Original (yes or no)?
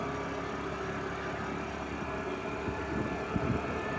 yes